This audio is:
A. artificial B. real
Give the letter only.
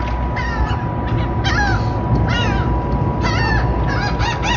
B